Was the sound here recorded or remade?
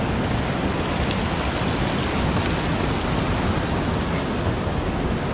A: recorded